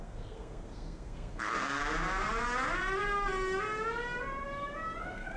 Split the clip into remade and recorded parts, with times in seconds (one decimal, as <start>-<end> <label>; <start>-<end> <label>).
0.0-1.8 remade; 1.8-5.0 recorded; 5.0-5.4 remade